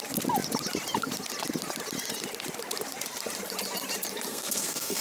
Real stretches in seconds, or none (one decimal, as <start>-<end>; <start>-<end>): 0.0-4.3